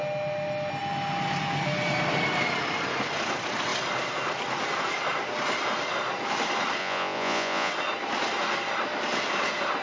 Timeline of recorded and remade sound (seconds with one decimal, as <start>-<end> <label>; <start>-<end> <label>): 0.0-6.8 recorded; 6.8-7.7 remade; 7.7-9.8 recorded

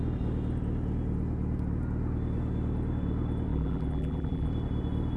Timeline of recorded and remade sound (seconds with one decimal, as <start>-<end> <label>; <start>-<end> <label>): 0.0-3.5 recorded; 3.5-4.5 remade; 4.5-5.2 recorded

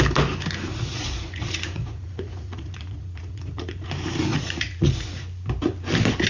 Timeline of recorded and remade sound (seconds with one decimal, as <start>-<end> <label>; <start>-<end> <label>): 0.0-0.7 recorded; 0.7-3.9 remade; 3.9-4.3 recorded; 4.3-5.2 remade; 5.2-6.3 recorded

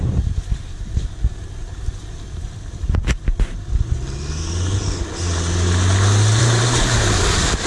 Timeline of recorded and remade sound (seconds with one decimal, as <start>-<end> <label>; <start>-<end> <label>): 0.0-3.3 remade; 3.3-6.4 recorded; 6.4-7.7 remade

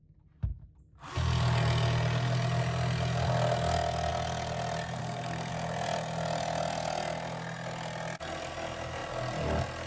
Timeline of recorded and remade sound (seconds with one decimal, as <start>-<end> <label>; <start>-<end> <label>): 0.0-5.0 recorded; 5.0-5.5 remade; 5.5-9.9 recorded